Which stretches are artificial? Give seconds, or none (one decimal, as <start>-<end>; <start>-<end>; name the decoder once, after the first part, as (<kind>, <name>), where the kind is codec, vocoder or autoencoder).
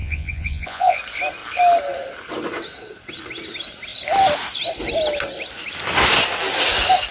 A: 0.0-1.0 (vocoder, Vocos)